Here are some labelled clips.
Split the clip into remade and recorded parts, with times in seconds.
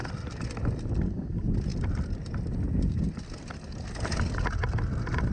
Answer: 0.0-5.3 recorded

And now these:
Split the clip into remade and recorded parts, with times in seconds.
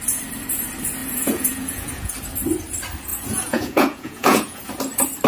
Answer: 0.0-1.0 recorded; 1.0-2.1 remade; 2.1-3.1 recorded; 3.1-4.6 remade; 4.6-5.3 recorded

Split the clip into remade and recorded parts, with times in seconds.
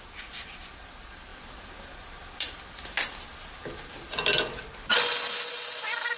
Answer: 0.0-6.2 recorded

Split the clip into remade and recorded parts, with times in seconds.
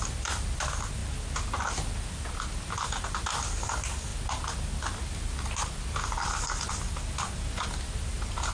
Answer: 0.0-8.5 recorded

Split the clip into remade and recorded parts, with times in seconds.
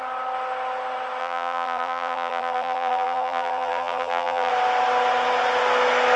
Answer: 0.0-1.2 recorded; 1.2-4.5 remade; 4.5-6.2 recorded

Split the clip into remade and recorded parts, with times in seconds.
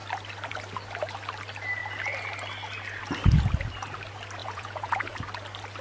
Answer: 0.0-4.4 recorded; 4.4-5.1 remade; 5.1-5.8 recorded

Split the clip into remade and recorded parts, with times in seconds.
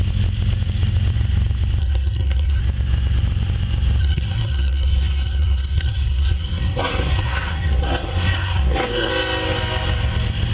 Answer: 0.0-1.8 recorded; 1.8-2.6 remade; 2.6-4.0 recorded; 4.0-9.1 remade; 9.1-10.5 recorded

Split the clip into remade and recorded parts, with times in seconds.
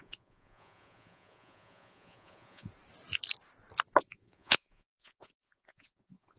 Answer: 0.0-2.7 remade; 2.7-4.0 recorded; 4.0-6.4 remade